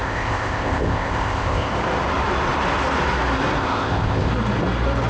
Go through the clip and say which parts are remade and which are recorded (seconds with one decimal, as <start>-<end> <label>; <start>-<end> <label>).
0.0-1.7 remade; 1.7-3.6 recorded; 3.6-4.3 remade; 4.3-5.1 recorded